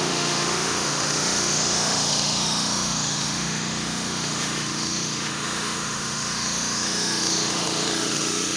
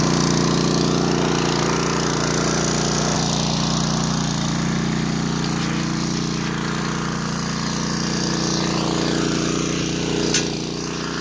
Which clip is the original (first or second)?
second